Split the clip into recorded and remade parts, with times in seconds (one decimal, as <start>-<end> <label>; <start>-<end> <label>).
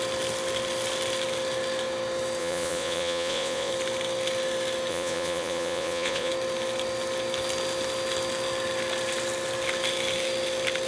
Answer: 0.0-2.4 recorded; 2.4-3.7 remade; 3.7-4.9 recorded; 4.9-6.3 remade; 6.3-10.9 recorded